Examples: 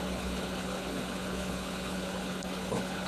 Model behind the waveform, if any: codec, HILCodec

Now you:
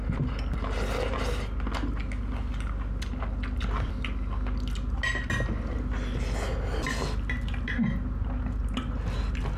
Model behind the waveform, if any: none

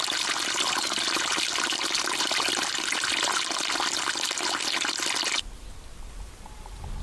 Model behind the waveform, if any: none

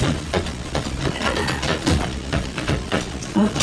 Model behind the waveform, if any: vocoder, Vocos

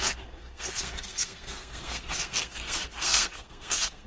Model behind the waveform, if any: codec, SNAC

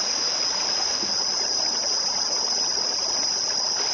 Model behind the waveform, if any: none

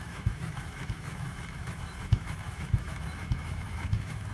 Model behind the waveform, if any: autoencoder, DAC-VAE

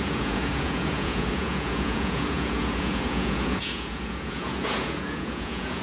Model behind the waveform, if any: vocoder, Vocos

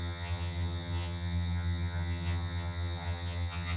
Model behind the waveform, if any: vocoder, HiFi-GAN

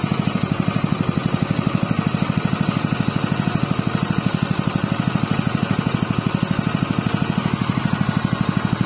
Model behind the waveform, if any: none